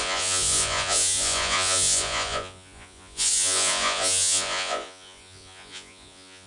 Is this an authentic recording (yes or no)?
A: no